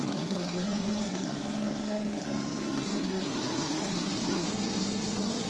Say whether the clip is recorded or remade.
remade